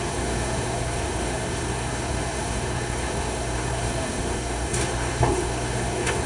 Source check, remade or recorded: remade